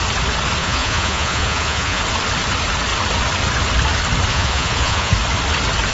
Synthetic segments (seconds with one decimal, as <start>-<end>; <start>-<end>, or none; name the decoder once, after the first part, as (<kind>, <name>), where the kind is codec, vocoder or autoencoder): 0.6-2.0 (vocoder, Vocos); 4.3-5.1